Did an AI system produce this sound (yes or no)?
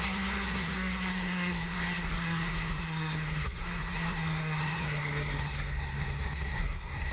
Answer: yes